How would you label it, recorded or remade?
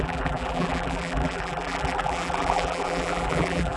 remade